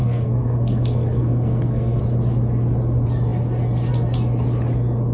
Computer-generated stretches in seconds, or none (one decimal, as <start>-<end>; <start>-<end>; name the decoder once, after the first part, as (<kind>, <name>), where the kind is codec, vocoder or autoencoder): 0.0-2.0 (codec, SNAC)